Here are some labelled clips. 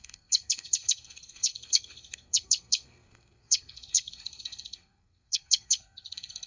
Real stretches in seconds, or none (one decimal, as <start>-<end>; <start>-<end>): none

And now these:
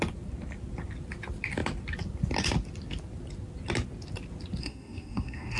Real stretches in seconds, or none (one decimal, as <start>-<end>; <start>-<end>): 0.0-4.6

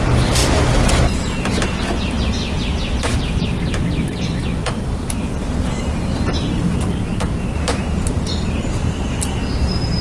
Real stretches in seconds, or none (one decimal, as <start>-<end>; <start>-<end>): 0.0-0.4; 0.9-7.1; 9.1-10.0

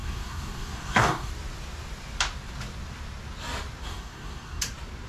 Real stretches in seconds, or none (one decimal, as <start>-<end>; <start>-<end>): 1.3-3.9; 4.6-5.1

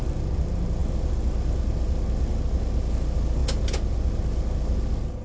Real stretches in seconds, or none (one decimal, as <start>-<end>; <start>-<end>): 0.0-5.2